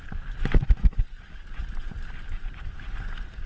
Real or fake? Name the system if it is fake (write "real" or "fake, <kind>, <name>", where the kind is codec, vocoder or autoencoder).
real